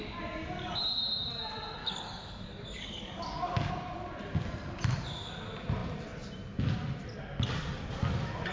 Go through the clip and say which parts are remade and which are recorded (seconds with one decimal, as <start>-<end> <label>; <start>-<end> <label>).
0.0-1.8 recorded; 1.8-3.7 remade; 3.7-8.5 recorded